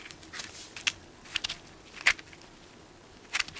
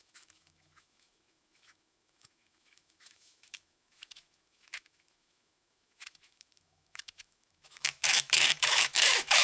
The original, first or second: first